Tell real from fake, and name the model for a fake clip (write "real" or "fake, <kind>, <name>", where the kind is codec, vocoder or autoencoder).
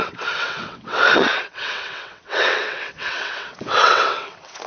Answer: fake, vocoder, WaveNeXt